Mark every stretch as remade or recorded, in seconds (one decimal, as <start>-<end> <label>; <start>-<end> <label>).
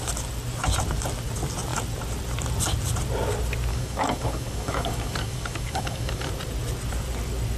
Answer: 0.0-3.7 recorded; 3.7-6.3 remade; 6.3-7.6 recorded